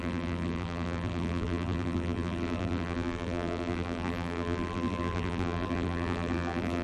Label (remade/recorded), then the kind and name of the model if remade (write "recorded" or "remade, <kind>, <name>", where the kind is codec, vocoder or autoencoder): remade, vocoder, BigVGAN v2